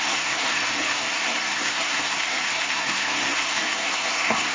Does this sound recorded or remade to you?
remade